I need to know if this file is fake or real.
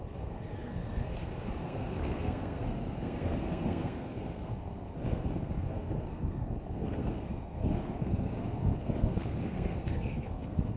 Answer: fake